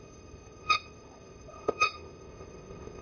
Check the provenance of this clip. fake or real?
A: fake